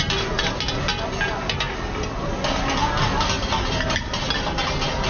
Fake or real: real